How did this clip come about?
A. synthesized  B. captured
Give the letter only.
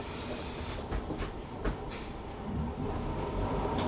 A